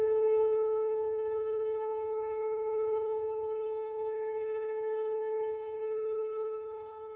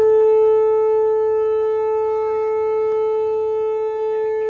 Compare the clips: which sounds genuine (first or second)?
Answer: second